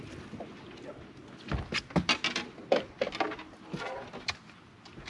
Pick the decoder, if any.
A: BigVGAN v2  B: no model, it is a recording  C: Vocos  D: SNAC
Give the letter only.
B